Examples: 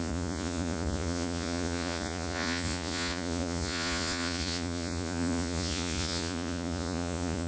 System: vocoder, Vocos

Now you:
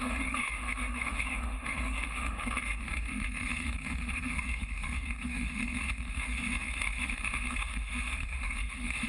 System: autoencoder, DAC-VAE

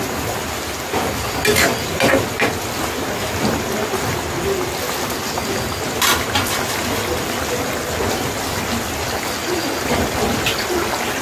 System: none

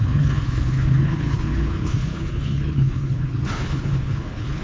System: codec, HILCodec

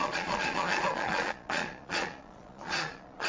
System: vocoder, Vocos